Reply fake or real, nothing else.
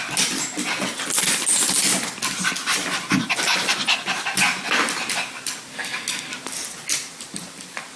real